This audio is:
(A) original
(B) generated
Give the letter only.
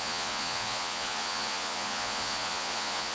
B